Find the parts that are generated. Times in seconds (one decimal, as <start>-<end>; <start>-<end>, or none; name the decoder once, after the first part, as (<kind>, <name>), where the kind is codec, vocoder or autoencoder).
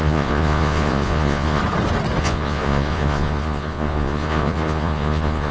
0.0-1.6 (vocoder, Vocos); 2.2-5.5